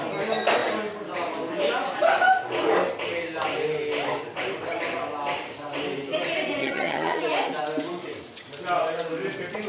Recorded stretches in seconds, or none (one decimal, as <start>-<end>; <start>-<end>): 0.0-6.6; 7.2-9.7